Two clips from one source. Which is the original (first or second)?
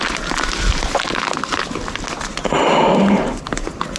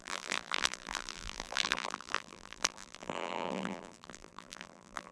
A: first